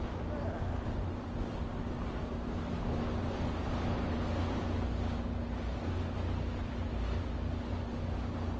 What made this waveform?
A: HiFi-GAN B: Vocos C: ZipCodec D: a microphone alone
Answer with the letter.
D